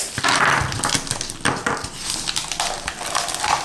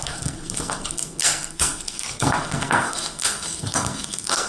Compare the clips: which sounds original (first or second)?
first